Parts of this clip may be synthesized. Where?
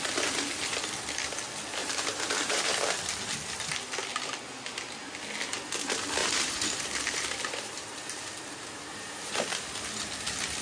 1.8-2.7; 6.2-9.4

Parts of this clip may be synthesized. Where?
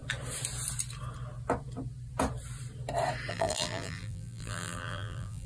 3.3-5.5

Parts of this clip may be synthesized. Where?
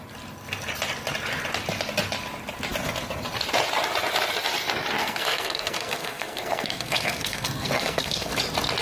5.0-8.3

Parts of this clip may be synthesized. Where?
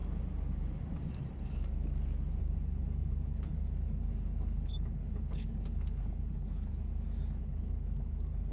2.4-6.7; 7.4-8.5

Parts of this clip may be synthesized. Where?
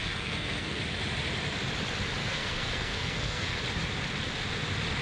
0.0-0.8; 2.2-3.6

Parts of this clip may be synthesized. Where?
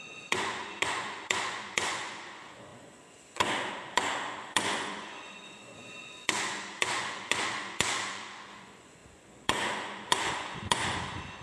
0.0-11.4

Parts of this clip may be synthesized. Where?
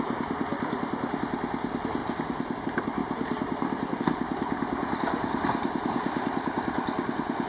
3.0-4.0